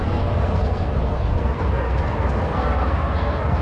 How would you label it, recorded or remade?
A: remade